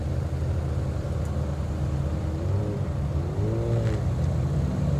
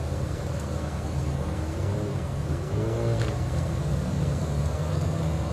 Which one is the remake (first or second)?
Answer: second